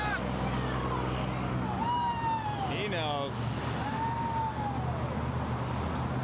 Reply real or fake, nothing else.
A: real